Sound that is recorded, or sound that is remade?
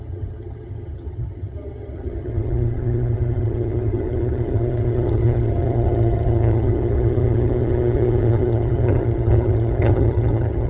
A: remade